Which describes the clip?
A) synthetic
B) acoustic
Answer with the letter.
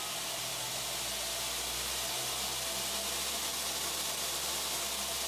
B